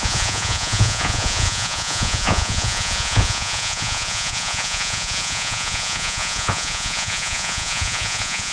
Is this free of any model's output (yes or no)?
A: no